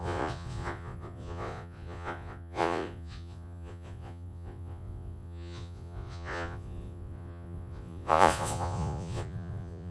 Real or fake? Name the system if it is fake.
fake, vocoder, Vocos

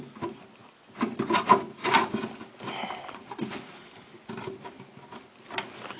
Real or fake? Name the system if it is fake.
real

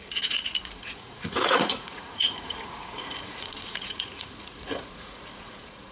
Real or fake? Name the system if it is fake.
fake, vocoder, Vocos